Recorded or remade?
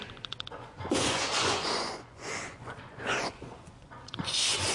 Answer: remade